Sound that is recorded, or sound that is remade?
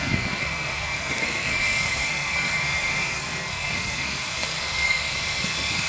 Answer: remade